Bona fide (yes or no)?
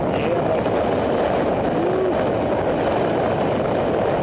yes